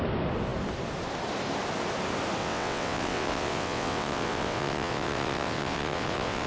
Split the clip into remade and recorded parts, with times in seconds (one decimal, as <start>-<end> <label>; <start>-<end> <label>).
0.0-2.4 recorded; 2.4-6.5 remade